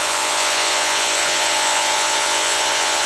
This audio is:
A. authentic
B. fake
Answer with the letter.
B